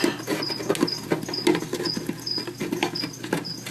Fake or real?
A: real